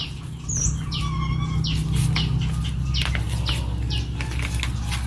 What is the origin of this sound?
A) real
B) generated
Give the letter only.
A